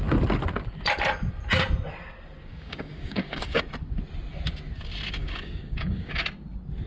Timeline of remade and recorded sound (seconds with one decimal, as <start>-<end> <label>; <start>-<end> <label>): 0.0-2.4 recorded; 2.4-3.6 remade; 3.6-5.2 recorded; 5.2-6.2 remade; 6.2-6.9 recorded